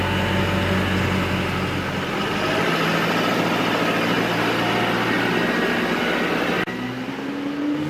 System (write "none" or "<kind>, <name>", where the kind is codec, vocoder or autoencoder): none